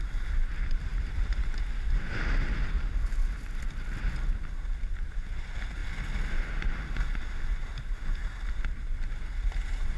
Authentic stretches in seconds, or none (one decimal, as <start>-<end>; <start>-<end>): 0.0-10.0